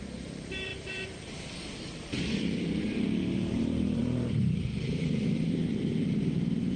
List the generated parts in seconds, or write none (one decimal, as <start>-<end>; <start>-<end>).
0.0-6.8